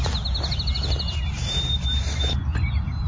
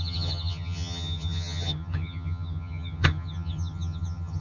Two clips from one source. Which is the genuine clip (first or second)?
first